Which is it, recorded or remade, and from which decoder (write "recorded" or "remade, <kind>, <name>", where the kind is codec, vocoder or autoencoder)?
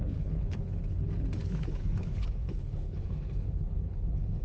remade, codec, HILCodec